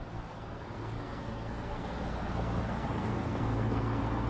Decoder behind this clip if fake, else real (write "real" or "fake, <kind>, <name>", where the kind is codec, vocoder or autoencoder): fake, codec, SNAC